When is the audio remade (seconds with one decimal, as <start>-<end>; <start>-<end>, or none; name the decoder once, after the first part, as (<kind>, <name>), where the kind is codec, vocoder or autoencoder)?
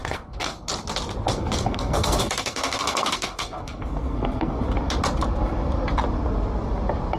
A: 0.0-0.7 (codec, SNAC); 1.3-4.6